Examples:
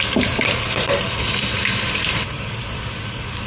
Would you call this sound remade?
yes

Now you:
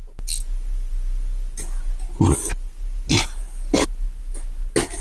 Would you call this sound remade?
no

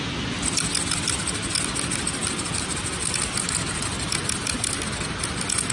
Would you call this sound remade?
no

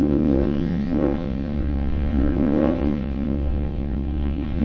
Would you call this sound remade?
yes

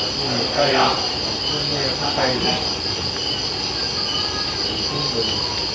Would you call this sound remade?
no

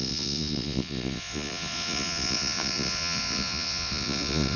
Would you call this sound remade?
yes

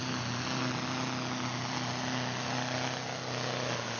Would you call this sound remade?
no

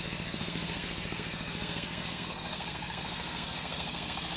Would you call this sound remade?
yes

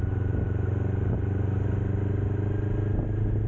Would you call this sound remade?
no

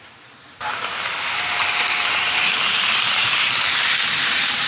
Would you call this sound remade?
yes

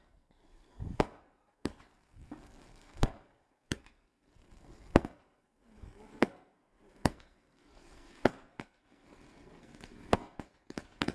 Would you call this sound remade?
yes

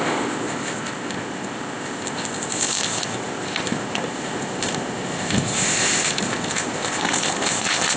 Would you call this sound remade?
yes